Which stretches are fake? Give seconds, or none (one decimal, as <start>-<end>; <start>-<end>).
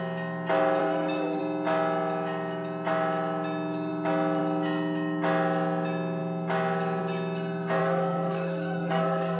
0.8-1.4; 7.8-9.4